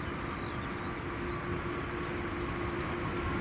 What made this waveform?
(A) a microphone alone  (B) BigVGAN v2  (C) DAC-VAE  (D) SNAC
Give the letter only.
A